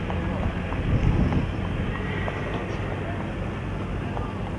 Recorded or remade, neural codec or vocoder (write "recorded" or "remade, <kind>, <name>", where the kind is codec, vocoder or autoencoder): recorded